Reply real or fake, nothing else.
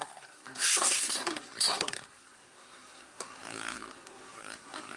fake